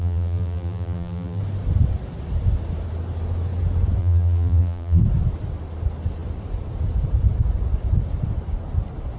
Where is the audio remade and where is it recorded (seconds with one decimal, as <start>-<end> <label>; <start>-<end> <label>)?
0.0-1.4 remade; 1.4-4.0 recorded; 4.0-5.0 remade; 5.0-9.2 recorded

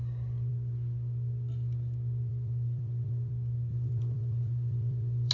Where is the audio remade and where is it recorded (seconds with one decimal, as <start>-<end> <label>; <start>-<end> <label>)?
0.0-2.3 recorded; 2.3-3.3 remade; 3.3-3.7 recorded; 3.7-5.3 remade

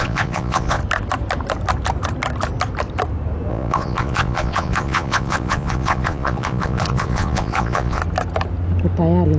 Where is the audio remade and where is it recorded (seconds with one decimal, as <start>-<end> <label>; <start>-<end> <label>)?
0.0-0.8 remade; 0.8-3.5 recorded; 3.5-8.0 remade; 8.0-9.4 recorded

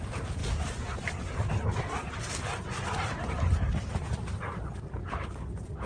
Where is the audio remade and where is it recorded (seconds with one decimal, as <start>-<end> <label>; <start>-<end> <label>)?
0.0-5.9 recorded

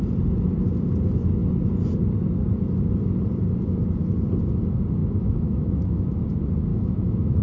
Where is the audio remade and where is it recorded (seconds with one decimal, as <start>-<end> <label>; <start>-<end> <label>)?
0.0-5.0 recorded; 5.0-6.2 remade; 6.2-6.7 recorded; 6.7-7.4 remade

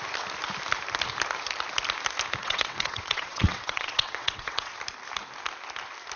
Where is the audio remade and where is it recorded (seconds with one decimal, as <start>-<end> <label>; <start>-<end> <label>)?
0.0-2.4 recorded; 2.4-4.7 remade; 4.7-6.2 recorded

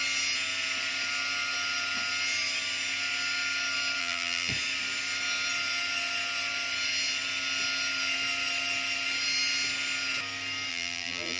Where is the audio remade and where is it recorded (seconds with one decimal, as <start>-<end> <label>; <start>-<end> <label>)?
0.0-4.0 recorded; 4.0-4.5 remade; 4.5-10.7 recorded; 10.7-11.4 remade